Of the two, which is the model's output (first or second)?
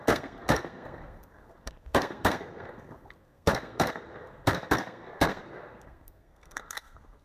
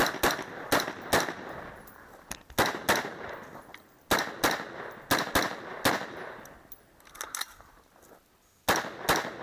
first